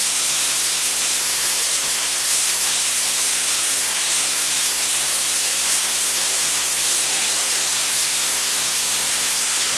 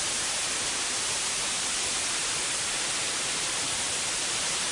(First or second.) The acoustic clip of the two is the second